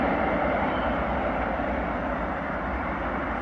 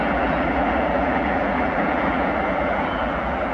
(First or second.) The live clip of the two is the first